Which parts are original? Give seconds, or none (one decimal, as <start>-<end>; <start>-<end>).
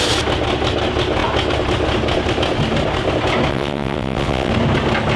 0.0-3.5; 4.5-5.2